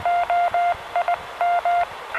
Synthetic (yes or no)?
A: no